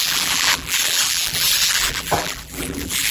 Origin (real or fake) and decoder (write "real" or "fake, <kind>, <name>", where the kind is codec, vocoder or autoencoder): fake, vocoder, BigVGAN v2